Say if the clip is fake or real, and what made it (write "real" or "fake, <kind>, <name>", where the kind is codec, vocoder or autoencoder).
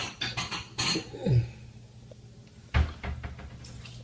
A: real